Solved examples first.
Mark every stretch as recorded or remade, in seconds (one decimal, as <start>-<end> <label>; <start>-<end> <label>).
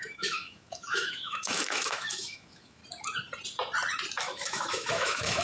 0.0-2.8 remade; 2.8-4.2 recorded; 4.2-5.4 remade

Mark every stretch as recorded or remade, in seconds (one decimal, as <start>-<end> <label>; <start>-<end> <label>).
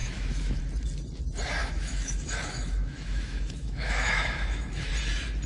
0.0-0.6 remade; 0.6-1.6 recorded; 1.6-4.9 remade; 4.9-5.5 recorded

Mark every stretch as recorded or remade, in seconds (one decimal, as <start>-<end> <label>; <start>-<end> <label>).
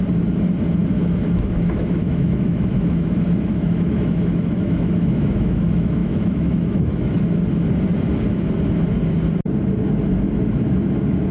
0.0-0.8 recorded; 0.8-5.6 remade; 5.6-6.0 recorded; 6.0-7.2 remade; 7.2-11.3 recorded